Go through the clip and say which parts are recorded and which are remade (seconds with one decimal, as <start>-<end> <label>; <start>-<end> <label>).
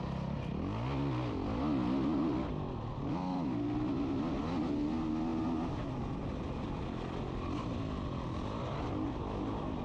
0.0-9.8 recorded